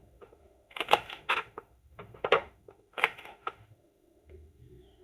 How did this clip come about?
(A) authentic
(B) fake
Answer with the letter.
B